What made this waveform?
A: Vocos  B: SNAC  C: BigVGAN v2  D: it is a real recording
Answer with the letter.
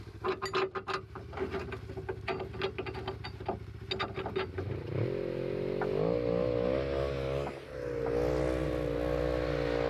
D